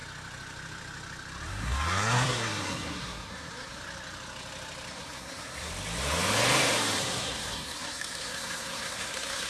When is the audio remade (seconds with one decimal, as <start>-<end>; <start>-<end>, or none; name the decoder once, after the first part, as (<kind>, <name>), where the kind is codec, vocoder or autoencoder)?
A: 1.5-3.8 (codec, SNAC); 4.9-5.7; 7.0-9.5

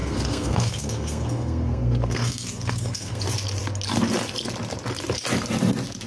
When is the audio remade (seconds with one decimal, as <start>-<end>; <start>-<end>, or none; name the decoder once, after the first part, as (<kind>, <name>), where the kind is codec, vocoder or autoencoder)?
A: 0.0-3.2 (codec, SNAC)

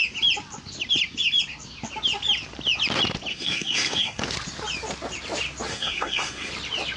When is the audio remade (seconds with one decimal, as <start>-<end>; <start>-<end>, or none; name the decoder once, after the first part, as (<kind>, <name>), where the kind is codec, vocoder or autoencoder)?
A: 3.3-4.2 (codec, SNAC); 5.7-6.5

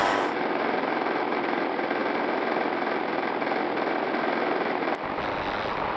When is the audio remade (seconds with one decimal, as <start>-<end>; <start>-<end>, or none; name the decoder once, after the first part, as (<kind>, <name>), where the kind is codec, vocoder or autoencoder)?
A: none

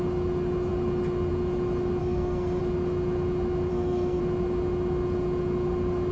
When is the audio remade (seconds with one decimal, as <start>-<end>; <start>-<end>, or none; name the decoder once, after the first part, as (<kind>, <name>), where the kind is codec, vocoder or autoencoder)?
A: 2.0-2.6 (codec, SNAC); 3.7-4.2

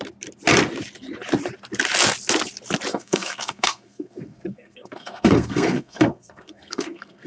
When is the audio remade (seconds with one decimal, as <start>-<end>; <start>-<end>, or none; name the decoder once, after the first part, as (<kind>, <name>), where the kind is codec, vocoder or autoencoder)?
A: 2.9-7.3 (codec, SNAC)

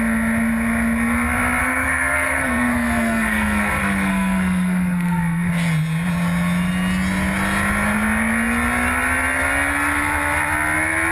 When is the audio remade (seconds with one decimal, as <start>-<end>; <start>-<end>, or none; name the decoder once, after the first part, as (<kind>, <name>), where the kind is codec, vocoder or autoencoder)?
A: 1.6-5.5 (codec, SNAC)

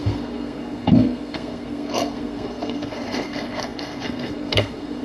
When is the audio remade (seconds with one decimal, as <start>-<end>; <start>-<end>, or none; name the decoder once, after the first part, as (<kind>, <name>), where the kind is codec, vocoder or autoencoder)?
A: 0.0-5.0 (codec, SNAC)